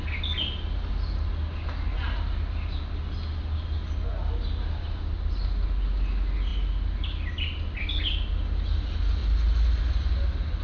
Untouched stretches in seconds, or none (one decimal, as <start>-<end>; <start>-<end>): 0.0-10.6